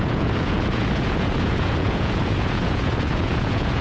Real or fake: fake